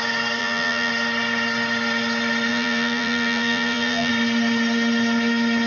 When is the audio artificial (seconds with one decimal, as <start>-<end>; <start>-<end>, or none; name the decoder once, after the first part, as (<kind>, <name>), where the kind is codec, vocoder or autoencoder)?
0.4-0.9 (vocoder, BigVGAN v2); 2.5-4.1